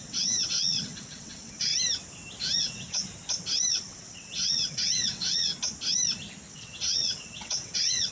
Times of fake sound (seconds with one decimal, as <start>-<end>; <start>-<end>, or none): 0.0-1.7; 2.6-3.0; 3.7-5.5; 6.5-8.1